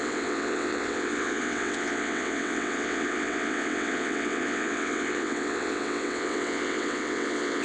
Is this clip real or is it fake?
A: fake